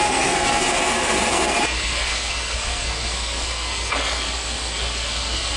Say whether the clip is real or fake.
fake